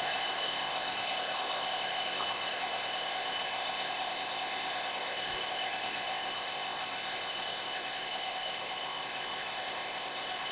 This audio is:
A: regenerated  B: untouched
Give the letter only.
A